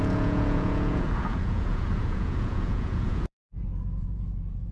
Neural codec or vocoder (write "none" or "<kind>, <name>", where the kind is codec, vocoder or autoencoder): vocoder, Vocos